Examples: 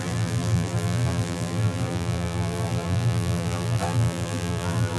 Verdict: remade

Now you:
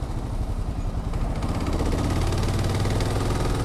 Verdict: recorded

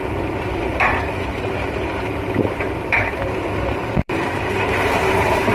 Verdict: remade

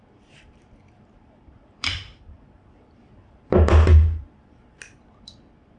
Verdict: remade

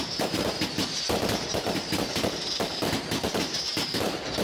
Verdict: remade